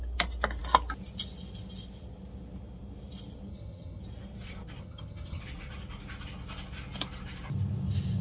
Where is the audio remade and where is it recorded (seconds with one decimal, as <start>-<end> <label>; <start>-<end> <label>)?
0.0-3.5 recorded; 3.5-4.0 remade; 4.0-4.8 recorded; 4.8-5.4 remade; 5.4-8.2 recorded